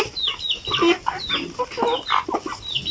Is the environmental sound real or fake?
real